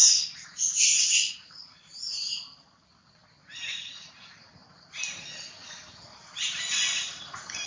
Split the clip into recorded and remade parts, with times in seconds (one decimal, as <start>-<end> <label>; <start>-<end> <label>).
0.0-2.3 remade; 2.3-3.4 recorded; 3.4-4.1 remade; 4.1-7.7 recorded